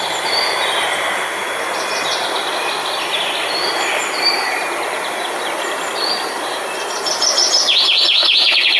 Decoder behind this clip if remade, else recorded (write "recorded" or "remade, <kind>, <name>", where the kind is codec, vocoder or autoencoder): recorded